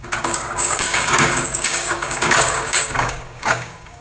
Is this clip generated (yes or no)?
yes